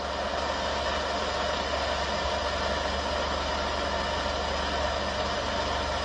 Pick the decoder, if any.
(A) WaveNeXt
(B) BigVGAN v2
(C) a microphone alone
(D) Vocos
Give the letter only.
C